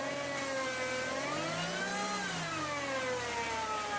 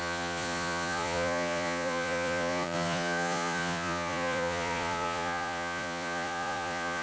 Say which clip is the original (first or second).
first